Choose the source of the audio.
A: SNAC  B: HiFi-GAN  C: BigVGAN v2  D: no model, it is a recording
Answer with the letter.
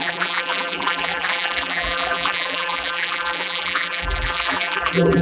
C